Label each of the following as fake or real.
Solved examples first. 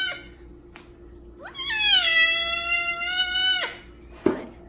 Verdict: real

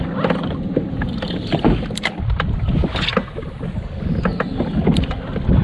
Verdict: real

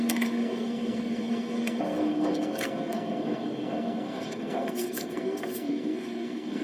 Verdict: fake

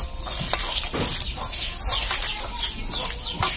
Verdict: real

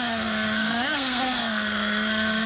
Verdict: fake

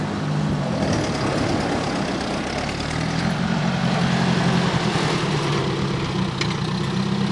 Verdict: real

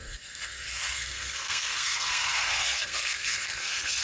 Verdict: fake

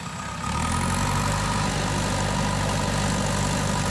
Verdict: real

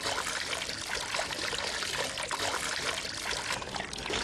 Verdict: real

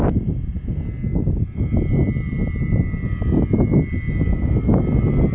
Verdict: real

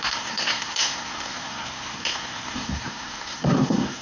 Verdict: fake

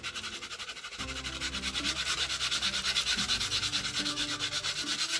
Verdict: real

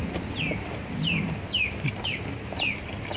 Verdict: real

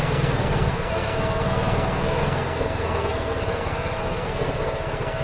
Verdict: fake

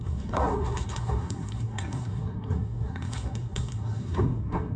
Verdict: fake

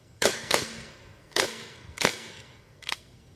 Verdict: fake